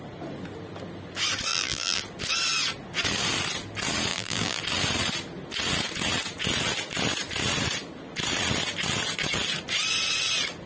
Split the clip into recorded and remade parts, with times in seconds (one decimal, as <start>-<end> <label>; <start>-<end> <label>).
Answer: 0.0-1.5 recorded; 1.5-2.0 remade; 2.0-4.1 recorded; 4.1-4.6 remade; 4.6-10.7 recorded